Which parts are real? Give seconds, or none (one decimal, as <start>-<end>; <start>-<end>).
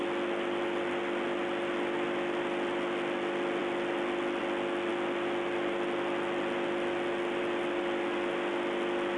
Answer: 0.0-9.2